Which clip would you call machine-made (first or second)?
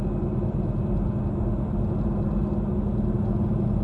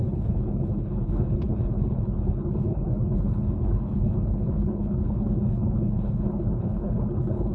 second